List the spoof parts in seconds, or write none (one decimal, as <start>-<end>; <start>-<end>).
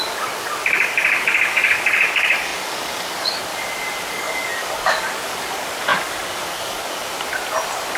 0.0-3.5; 4.1-7.0